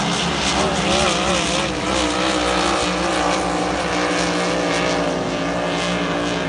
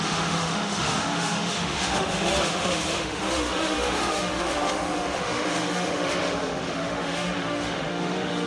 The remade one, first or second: second